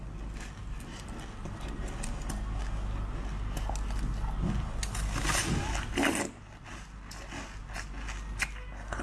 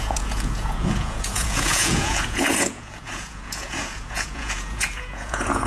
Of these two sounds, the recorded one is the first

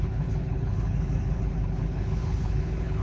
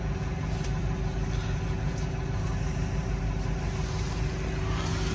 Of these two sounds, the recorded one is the second